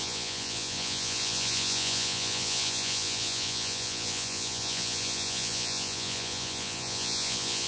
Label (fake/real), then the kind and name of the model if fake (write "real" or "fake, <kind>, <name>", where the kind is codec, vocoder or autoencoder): fake, vocoder, Vocos